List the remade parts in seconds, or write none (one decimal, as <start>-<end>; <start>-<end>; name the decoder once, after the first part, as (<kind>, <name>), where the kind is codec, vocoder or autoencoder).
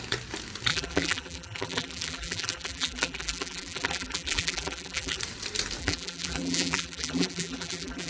0.7-5.2 (vocoder, BigVGAN v2); 5.8-8.1